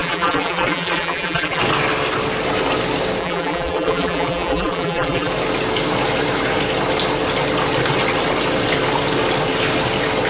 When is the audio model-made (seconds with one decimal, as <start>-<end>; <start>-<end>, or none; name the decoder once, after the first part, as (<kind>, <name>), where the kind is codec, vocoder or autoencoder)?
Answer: 0.0-1.6 (vocoder, BigVGAN v2); 3.2-5.3